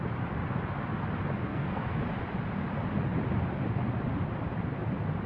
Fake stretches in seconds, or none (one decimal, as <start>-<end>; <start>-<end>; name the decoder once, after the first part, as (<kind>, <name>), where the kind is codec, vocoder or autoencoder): 1.5-2.0 (codec, SNAC)